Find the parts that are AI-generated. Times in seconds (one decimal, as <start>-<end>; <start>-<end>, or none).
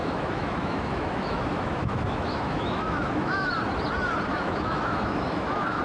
0.0-3.5; 4.3-5.8